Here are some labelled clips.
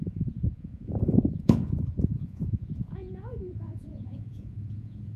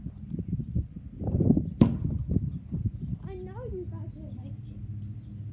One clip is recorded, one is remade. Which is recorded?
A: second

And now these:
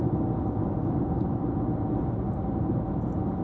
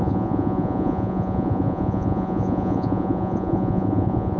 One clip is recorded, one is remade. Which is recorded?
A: first